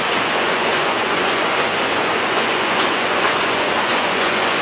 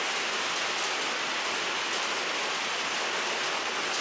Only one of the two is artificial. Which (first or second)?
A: first